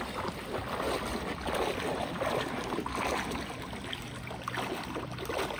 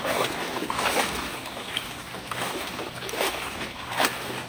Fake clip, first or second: second